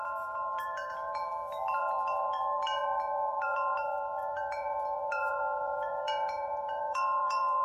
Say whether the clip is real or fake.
fake